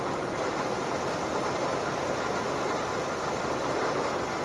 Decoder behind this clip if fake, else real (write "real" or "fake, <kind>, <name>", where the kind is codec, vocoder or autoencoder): real